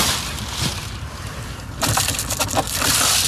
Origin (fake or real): fake